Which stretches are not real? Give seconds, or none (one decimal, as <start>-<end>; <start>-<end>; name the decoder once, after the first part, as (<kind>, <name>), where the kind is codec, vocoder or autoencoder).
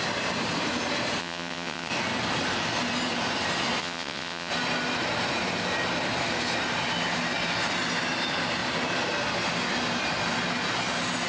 1.2-1.9 (vocoder, WaveNeXt); 3.8-4.5